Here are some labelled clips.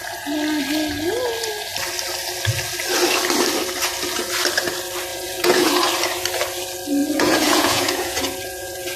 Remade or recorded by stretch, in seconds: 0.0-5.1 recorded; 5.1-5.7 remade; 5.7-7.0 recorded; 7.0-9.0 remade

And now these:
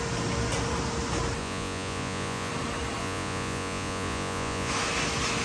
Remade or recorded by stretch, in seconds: 0.0-1.4 recorded; 1.4-2.5 remade; 2.5-3.0 recorded; 3.0-4.7 remade; 4.7-5.4 recorded

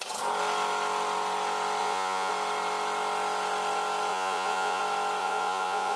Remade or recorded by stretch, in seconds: 0.0-1.8 recorded; 1.8-2.3 remade; 2.3-4.1 recorded; 4.1-4.8 remade; 4.8-5.2 recorded; 5.2-6.0 remade

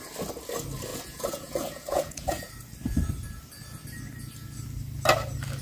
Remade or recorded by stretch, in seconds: 0.0-0.9 recorded; 0.9-2.5 remade; 2.5-5.6 recorded

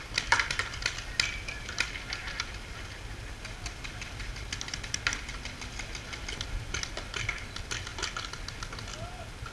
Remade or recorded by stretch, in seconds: 0.0-9.5 recorded

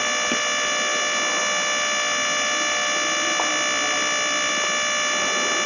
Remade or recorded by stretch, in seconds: 0.0-5.7 recorded